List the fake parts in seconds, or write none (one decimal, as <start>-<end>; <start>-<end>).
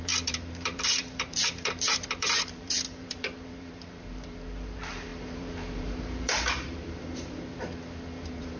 0.0-8.6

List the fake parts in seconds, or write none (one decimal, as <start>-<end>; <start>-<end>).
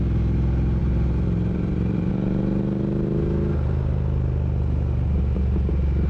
0.8-2.1